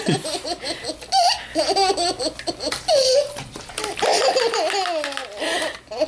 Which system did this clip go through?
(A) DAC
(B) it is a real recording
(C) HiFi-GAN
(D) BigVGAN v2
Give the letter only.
B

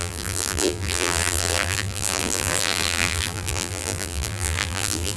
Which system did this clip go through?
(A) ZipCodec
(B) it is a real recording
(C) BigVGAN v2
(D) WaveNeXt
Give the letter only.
C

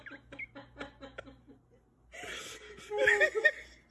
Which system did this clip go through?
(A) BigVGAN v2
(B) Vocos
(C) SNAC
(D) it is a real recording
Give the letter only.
D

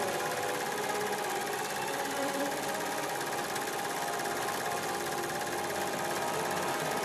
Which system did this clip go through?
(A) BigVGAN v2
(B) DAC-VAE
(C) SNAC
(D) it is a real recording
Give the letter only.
A